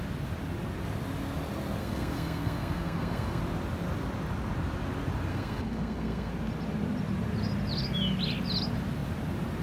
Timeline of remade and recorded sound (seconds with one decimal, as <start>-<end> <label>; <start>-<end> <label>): 0.0-1.8 recorded; 1.8-3.4 remade; 3.4-5.3 recorded; 5.3-6.3 remade; 6.3-9.6 recorded